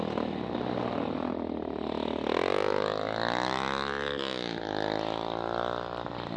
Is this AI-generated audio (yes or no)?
no